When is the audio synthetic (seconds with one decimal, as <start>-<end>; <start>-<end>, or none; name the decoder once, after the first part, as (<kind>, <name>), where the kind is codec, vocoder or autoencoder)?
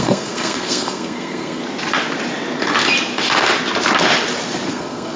0.0-1.6 (codec, SNAC); 4.7-5.2